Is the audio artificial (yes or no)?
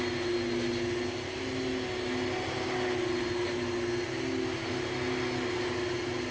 no